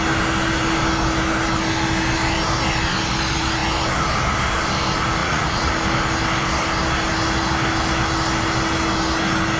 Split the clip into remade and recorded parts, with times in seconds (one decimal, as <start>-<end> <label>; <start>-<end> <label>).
0.0-5.2 recorded; 5.2-5.7 remade; 5.7-9.6 recorded